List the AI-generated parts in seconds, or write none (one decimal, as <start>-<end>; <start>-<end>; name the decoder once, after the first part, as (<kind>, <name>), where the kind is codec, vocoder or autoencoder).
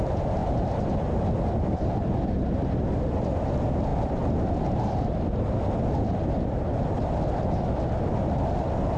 3.9-4.6 (vocoder, BigVGAN v2)